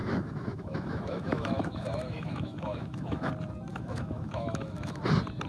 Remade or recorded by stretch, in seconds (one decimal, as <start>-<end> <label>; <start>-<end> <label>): 0.0-3.3 remade; 3.3-3.7 recorded; 3.7-5.0 remade; 5.0-5.5 recorded